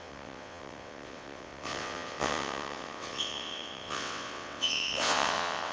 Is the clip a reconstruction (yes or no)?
yes